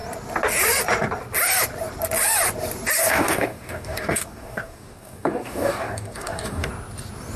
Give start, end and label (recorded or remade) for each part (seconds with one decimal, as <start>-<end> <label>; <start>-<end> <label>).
0.0-3.0 recorded; 3.0-6.7 remade; 6.7-7.4 recorded

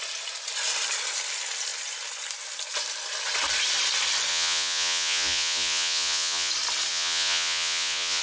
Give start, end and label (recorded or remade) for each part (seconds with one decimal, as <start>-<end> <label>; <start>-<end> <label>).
0.0-4.3 recorded; 4.3-6.5 remade; 6.5-6.9 recorded; 6.9-8.2 remade

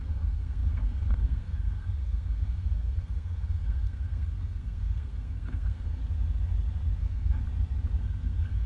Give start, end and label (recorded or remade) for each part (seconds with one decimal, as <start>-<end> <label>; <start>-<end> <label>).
0.0-6.0 remade; 6.0-7.0 recorded; 7.0-7.4 remade; 7.4-8.0 recorded; 8.0-8.7 remade

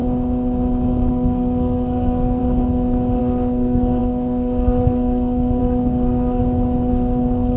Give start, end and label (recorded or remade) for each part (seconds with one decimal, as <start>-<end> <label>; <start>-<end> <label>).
0.0-1.1 recorded; 1.1-2.4 remade; 2.4-3.2 recorded; 3.2-6.4 remade; 6.4-6.9 recorded; 6.9-7.6 remade

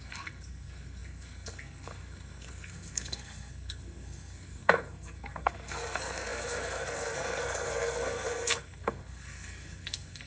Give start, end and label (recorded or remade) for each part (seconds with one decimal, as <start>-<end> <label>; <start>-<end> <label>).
0.0-10.3 remade